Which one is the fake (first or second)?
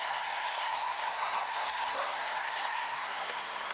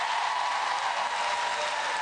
first